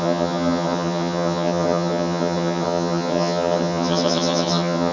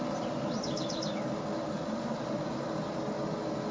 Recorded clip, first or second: second